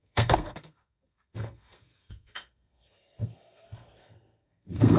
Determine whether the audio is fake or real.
fake